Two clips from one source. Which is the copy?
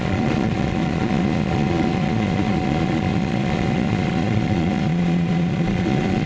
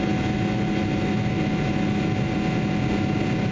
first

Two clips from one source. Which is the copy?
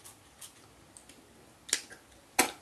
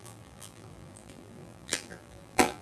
second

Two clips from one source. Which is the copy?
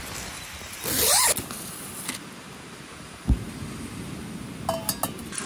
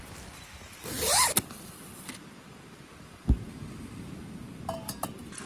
second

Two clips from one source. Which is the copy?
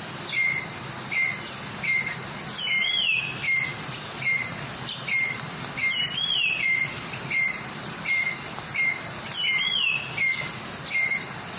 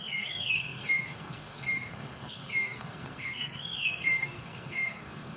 second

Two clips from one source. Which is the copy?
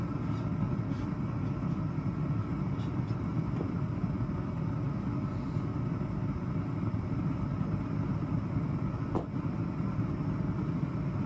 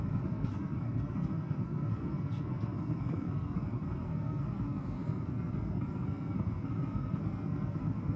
second